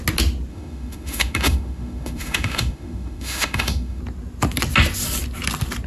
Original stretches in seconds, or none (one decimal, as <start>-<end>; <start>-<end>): 0.0-0.5; 4.0-5.9